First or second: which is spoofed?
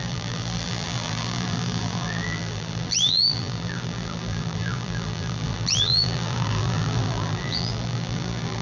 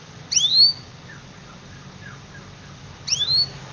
first